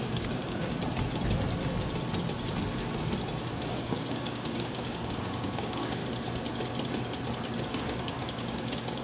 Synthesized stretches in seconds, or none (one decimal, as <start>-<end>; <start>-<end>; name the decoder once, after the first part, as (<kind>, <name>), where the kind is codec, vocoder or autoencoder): 0.0-0.8 (codec, DAC); 3.7-6.0; 7.7-9.0